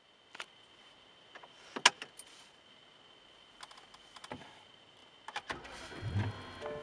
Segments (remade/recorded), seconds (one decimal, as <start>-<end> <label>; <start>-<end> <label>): 0.0-6.8 recorded